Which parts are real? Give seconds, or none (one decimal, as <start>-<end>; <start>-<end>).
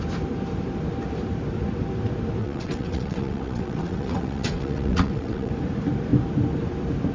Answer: 0.0-2.4; 5.5-7.1